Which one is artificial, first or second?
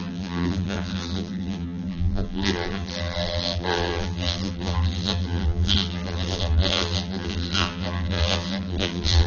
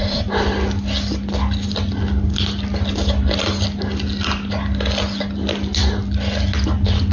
first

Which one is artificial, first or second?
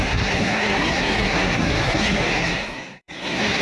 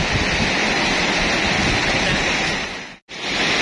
first